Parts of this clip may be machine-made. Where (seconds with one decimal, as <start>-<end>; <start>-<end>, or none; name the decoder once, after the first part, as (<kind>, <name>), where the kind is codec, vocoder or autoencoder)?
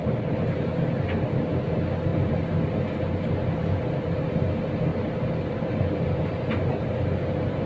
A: none